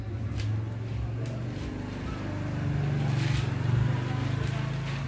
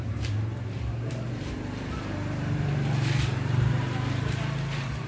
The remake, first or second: second